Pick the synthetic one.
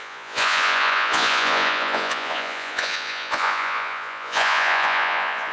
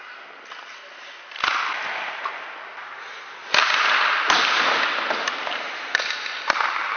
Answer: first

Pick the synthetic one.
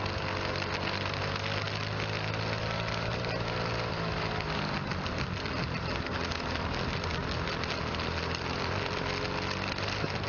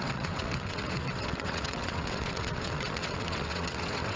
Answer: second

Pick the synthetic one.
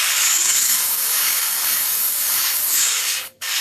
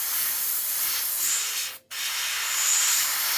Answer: first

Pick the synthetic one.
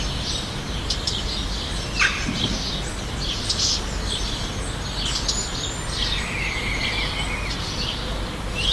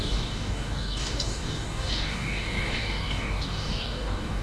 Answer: second